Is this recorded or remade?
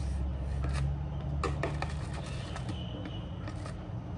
recorded